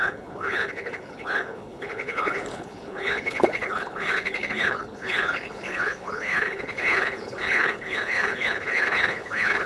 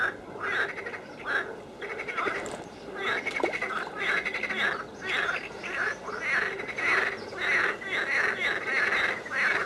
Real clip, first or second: second